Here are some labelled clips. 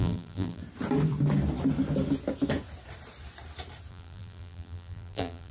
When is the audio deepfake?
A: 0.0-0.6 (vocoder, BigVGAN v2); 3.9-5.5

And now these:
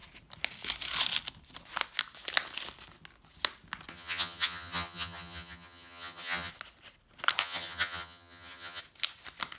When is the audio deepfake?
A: 3.9-6.5 (vocoder, HiFi-GAN); 7.4-8.8

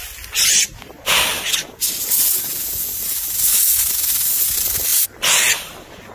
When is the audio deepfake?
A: none

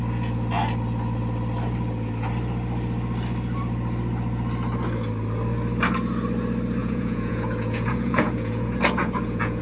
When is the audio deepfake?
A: 6.8-9.6 (vocoder, Vocos)

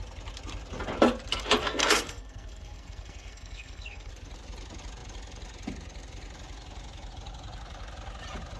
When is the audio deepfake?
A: 1.6-4.1 (codec, SNAC)

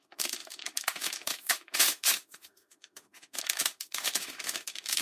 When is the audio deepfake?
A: 0.0-5.0 (autoencoder, DAC-VAE)